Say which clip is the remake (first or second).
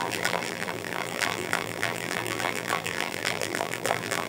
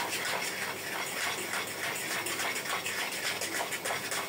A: first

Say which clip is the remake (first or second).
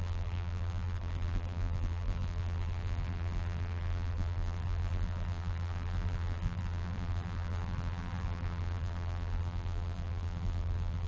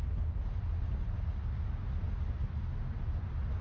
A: first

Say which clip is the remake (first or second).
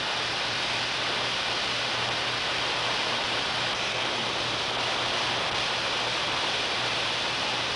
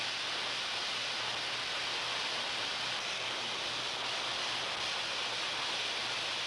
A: first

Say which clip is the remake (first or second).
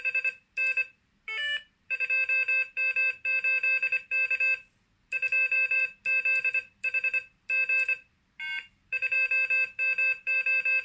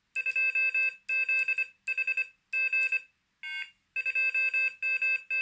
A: first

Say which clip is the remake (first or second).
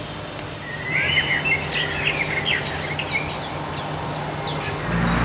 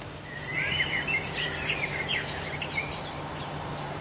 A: second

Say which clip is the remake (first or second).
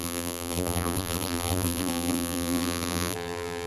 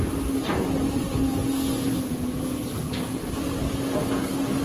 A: first